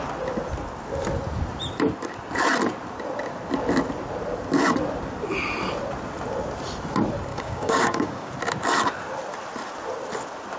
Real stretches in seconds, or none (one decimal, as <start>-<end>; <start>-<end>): 0.0-7.3; 8.3-10.6